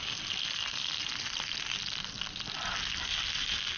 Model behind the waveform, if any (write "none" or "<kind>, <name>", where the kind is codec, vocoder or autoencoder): none